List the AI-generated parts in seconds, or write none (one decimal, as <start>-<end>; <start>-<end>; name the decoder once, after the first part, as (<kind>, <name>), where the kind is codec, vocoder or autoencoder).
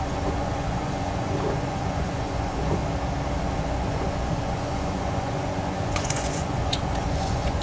0.0-2.8 (vocoder, Vocos); 3.4-7.6